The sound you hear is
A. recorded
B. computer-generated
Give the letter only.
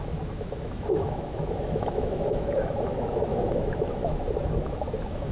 B